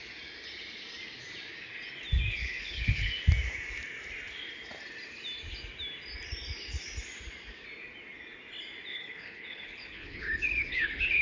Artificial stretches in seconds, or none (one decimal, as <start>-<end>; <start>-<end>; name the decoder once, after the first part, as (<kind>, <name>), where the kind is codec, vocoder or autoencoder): 2.3-3.1 (codec, HILCodec); 8.9-11.2